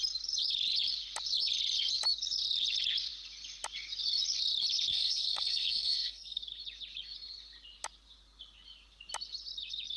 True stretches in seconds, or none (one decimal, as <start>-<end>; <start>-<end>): 0.0-4.9; 6.4-10.0